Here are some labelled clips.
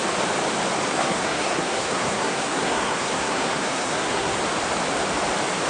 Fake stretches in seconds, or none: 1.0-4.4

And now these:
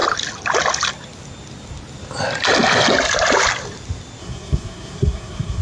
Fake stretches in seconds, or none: 4.2-5.6

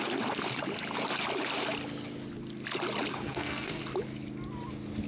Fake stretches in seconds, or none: 3.1-3.8

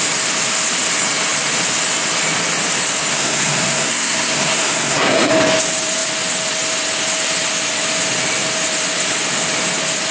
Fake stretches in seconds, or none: 3.1-5.3

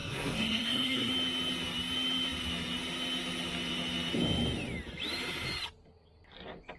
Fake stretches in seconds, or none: 0.0-1.1

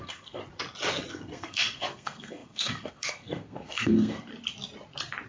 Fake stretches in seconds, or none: 0.0-0.4; 1.1-4.3